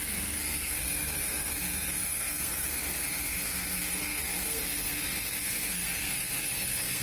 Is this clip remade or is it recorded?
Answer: remade